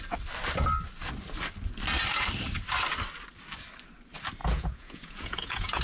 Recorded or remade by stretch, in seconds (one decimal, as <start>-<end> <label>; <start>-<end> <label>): 0.0-4.4 recorded; 4.4-5.8 remade